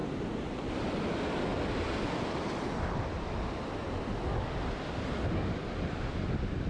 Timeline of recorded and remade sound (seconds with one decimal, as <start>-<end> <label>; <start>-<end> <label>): 0.0-6.7 recorded